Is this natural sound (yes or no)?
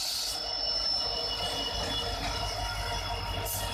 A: yes